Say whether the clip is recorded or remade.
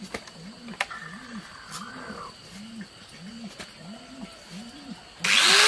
recorded